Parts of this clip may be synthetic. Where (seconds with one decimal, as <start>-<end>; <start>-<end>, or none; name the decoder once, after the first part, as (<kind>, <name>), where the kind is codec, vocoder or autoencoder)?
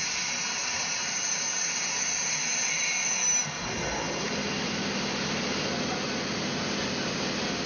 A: none